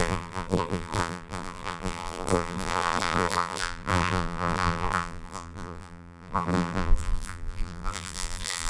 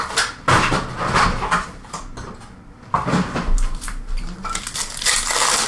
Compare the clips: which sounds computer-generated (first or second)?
first